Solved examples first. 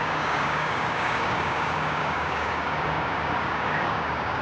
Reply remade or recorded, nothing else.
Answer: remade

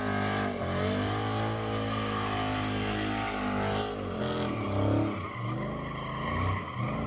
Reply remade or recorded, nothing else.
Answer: recorded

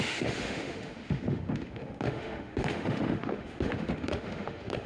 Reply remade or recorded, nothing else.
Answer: remade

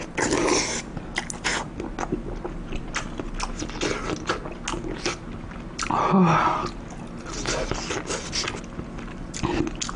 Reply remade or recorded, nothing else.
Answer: recorded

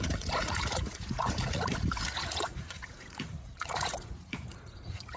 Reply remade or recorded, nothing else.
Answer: remade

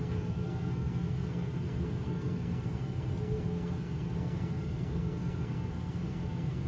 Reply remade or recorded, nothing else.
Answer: remade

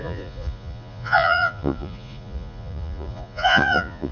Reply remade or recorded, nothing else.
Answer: remade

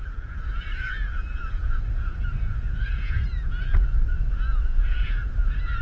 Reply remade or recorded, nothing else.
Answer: remade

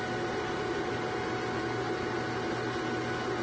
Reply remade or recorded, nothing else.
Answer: recorded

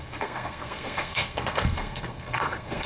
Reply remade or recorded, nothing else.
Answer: remade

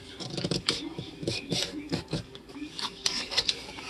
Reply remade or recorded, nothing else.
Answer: remade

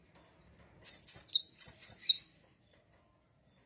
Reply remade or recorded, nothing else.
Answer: recorded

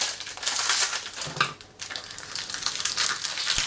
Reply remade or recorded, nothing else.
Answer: recorded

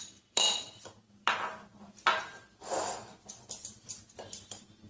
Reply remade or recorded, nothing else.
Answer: remade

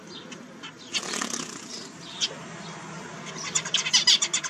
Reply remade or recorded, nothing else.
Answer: recorded